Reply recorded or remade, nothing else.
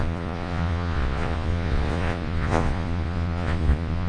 remade